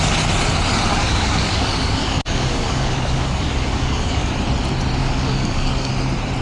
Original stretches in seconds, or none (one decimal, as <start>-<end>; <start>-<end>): 0.0-0.9; 4.3-5.0; 5.9-6.4